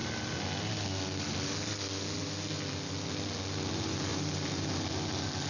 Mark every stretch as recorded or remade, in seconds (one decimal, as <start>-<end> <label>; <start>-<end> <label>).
0.0-5.5 recorded